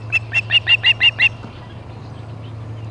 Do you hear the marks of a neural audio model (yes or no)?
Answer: no